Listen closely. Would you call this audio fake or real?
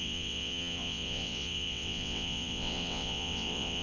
fake